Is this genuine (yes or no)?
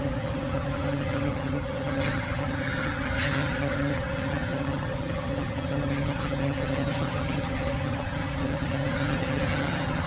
no